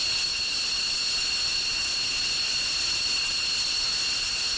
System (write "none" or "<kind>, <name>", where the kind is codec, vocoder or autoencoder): none